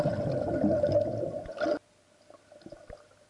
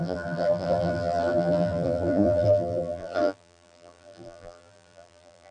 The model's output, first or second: second